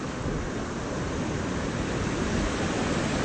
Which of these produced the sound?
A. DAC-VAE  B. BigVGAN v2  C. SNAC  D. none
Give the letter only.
D